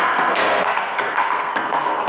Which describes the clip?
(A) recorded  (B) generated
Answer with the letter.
B